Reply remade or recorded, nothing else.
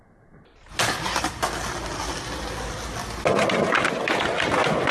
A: recorded